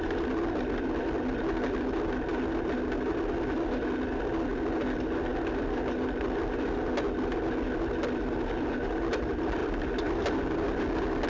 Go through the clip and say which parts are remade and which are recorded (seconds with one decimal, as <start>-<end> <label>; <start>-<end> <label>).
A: 0.0-11.3 recorded